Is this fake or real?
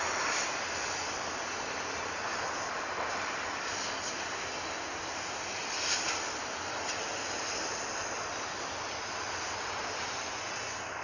real